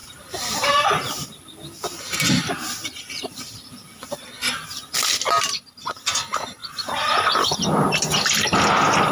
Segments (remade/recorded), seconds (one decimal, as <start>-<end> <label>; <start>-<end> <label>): 0.0-0.7 remade; 0.7-2.8 recorded; 2.8-3.5 remade; 3.5-6.6 recorded; 6.6-7.6 remade; 7.6-9.1 recorded